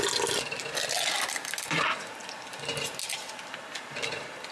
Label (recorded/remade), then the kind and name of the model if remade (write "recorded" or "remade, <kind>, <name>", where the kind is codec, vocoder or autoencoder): recorded